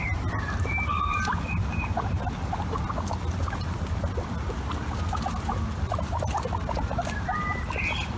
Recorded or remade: recorded